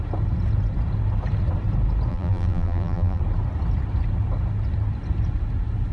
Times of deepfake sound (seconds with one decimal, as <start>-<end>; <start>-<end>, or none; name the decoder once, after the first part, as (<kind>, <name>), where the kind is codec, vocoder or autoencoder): 2.1-3.2 (vocoder, BigVGAN v2)